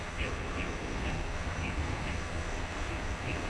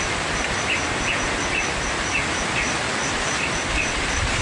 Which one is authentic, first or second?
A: second